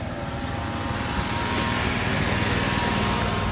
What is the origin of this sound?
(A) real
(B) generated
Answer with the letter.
A